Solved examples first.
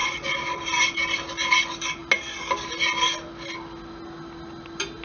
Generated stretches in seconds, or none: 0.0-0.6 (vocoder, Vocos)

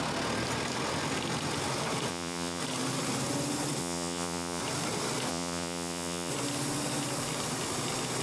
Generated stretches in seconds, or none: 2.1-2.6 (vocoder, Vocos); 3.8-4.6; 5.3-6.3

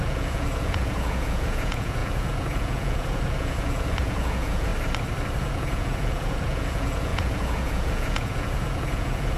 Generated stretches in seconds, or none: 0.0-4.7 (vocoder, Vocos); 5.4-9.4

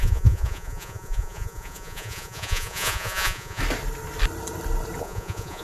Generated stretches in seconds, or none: 0.0-3.6 (vocoder, Vocos); 5.0-5.6